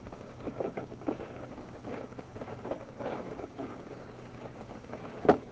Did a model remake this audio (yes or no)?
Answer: yes